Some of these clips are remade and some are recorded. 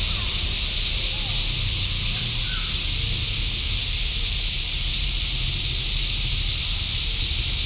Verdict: recorded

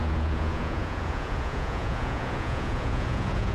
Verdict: remade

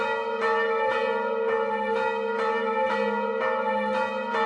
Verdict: recorded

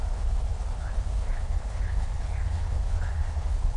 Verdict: remade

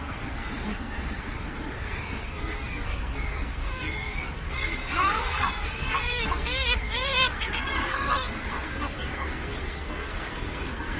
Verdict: remade